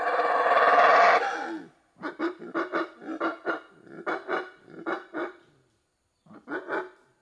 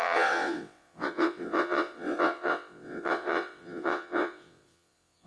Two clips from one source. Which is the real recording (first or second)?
first